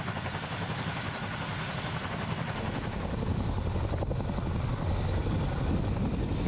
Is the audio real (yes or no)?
yes